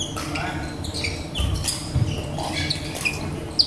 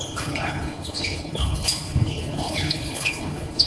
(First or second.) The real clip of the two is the first